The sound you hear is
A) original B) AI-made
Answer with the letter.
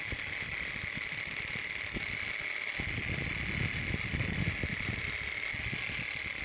A